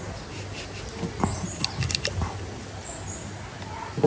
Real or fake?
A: real